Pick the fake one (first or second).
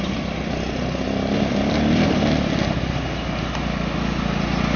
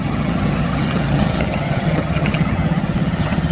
second